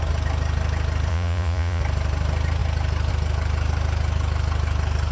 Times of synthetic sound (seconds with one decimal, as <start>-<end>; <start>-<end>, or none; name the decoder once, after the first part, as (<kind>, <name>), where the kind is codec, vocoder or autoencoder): 1.1-1.8 (vocoder, Vocos)